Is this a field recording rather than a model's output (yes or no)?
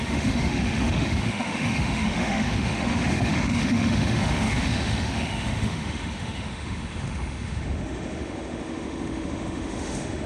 no